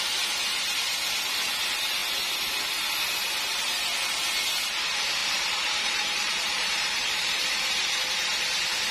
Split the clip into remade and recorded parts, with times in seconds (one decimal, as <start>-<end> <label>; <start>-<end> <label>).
0.0-5.2 recorded; 5.2-8.0 remade; 8.0-8.9 recorded